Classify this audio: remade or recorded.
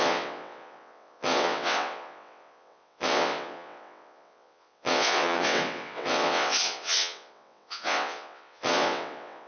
remade